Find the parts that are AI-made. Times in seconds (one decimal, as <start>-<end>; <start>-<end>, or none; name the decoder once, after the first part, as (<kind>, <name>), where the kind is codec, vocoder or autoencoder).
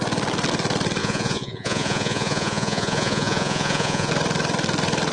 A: 1.0-4.1 (vocoder, Vocos)